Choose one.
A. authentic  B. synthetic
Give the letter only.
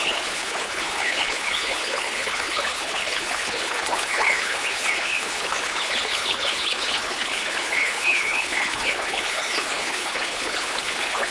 B